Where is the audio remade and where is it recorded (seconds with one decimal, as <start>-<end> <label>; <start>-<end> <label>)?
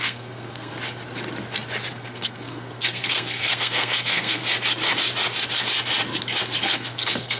0.0-0.7 remade; 0.7-1.9 recorded; 1.9-4.4 remade; 4.4-6.6 recorded; 6.6-7.4 remade